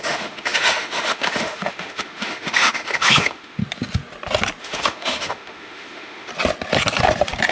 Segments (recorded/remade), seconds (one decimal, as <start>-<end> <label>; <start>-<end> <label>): 0.0-3.6 remade; 3.6-4.6 recorded; 4.6-6.3 remade; 6.3-7.5 recorded